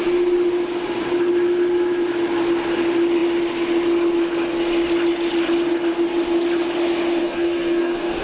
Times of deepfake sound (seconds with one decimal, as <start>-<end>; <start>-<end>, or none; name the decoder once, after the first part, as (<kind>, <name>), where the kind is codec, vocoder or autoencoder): 7.2-8.2 (codec, SNAC)